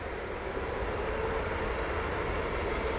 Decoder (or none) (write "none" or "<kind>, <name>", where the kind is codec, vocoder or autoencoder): none